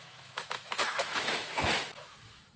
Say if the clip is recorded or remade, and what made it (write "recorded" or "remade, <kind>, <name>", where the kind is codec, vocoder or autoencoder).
remade, autoencoder, DAC-VAE